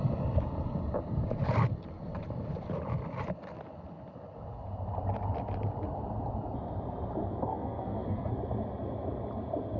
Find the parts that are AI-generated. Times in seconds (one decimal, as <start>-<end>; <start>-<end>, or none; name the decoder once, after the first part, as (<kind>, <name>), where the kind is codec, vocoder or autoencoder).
7.5-8.3 (codec, SNAC)